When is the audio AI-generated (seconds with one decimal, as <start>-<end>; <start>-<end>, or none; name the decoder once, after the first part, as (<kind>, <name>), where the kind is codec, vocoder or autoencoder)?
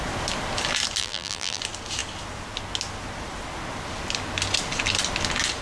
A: 1.0-1.6 (vocoder, BigVGAN v2)